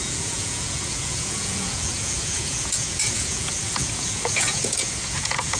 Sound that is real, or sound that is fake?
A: fake